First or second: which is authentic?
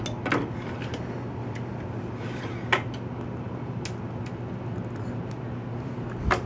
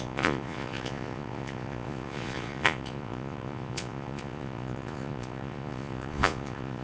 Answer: first